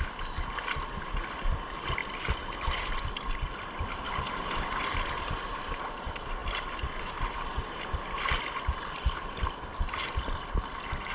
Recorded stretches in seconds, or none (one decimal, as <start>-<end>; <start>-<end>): 0.0-11.1